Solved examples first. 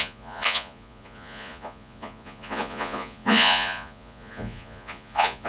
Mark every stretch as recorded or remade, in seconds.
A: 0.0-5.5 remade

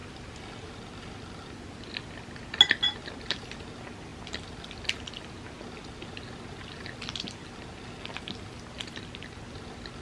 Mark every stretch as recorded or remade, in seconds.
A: 0.0-10.0 recorded

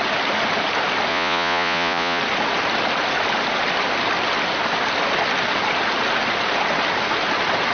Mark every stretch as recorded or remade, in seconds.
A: 0.0-1.1 recorded; 1.1-2.2 remade; 2.2-7.7 recorded

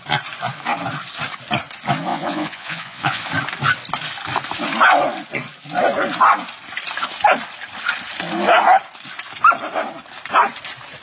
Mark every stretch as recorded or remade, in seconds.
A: 0.0-2.1 recorded; 2.1-3.2 remade; 3.2-11.0 recorded

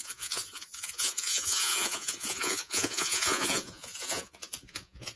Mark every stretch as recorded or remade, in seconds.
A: 0.0-5.2 remade

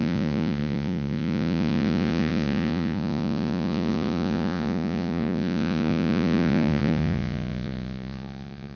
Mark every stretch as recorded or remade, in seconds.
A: 0.0-8.8 remade

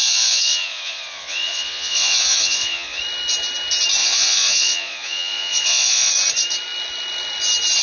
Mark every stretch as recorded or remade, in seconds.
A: 0.0-3.0 remade; 3.0-4.0 recorded; 4.0-6.1 remade; 6.1-7.8 recorded

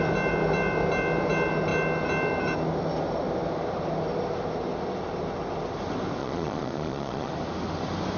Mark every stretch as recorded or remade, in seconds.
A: 0.0-6.2 recorded; 6.2-7.3 remade; 7.3-8.2 recorded